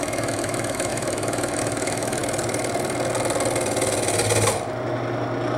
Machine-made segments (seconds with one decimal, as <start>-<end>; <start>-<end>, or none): 0.0-2.2